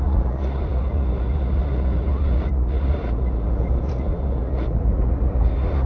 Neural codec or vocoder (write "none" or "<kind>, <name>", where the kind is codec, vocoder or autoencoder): vocoder, Vocos